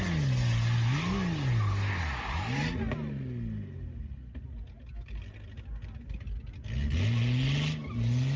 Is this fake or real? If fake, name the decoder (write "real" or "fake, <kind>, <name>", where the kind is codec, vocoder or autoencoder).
real